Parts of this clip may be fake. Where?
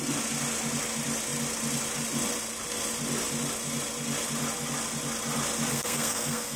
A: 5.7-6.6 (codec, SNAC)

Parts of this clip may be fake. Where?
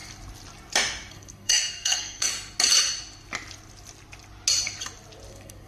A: 1.1-2.3 (codec, SNAC); 5.3-5.7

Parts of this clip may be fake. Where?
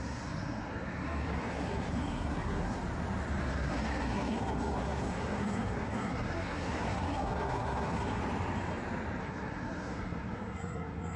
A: 0.0-2.8 (codec, SNAC); 3.4-8.2; 9.2-11.2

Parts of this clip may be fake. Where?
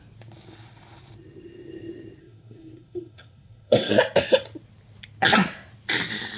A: 2.2-3.9 (codec, SNAC)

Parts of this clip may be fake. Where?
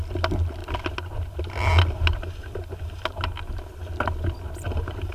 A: none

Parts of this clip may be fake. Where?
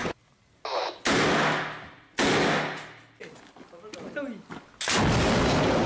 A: none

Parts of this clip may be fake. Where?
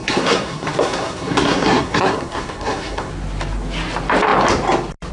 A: 0.0-3.1 (codec, SNAC)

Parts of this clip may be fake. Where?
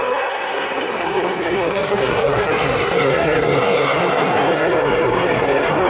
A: 0.0-5.9 (codec, SNAC)